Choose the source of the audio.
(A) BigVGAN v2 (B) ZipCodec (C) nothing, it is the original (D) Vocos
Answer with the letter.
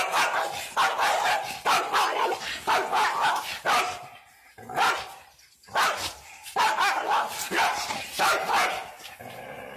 C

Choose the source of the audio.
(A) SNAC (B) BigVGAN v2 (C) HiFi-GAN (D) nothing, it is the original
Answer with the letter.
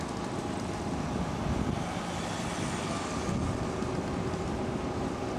D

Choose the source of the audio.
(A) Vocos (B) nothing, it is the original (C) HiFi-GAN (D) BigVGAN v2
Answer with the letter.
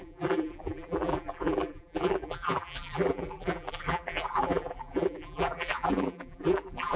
D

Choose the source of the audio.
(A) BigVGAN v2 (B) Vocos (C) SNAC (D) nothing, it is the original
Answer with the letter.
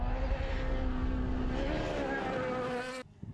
D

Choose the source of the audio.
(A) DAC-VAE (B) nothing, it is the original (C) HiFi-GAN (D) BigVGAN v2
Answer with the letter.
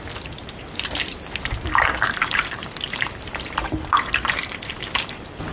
D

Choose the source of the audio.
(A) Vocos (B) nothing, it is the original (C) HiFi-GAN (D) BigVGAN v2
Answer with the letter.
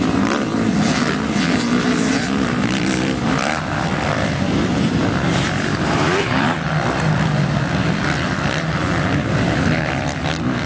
D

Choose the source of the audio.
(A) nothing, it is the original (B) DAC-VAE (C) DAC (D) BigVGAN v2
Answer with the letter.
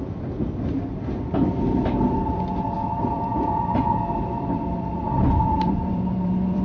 D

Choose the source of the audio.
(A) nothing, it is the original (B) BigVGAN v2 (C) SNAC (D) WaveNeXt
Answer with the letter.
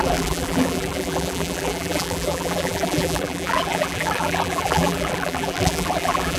B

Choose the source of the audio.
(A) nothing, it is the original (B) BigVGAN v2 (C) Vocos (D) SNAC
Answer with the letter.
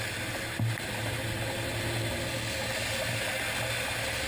A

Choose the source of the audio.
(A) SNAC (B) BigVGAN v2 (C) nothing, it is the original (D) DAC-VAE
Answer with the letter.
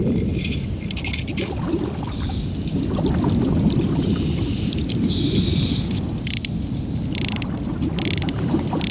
B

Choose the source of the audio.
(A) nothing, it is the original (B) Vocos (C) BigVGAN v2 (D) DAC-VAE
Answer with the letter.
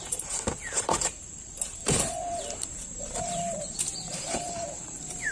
C